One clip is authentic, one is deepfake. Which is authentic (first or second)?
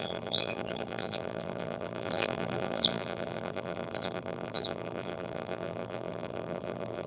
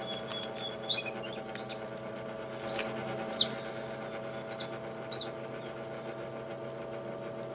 second